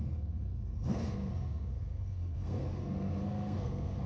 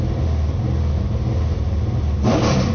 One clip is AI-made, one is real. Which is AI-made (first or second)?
first